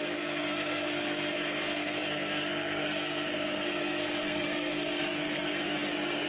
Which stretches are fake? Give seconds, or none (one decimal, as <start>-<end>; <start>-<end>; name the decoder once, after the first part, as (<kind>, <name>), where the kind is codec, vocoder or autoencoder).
0.0-6.3 (codec, SNAC)